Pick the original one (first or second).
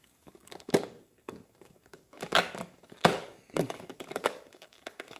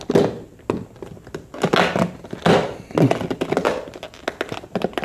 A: second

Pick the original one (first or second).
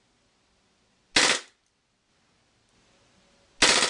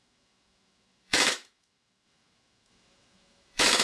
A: first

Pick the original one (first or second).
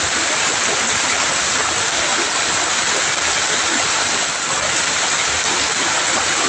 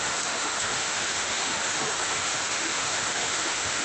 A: first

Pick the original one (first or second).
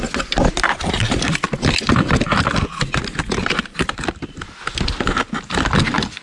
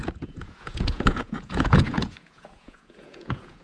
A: first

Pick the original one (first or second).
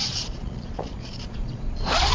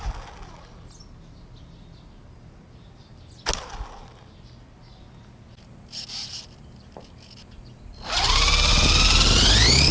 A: second